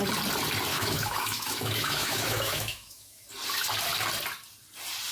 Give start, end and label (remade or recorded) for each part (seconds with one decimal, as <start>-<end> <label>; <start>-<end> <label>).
0.0-0.7 recorded; 0.7-3.3 remade; 3.3-5.1 recorded